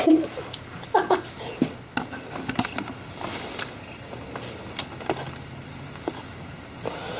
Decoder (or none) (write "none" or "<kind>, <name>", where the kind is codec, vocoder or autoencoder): none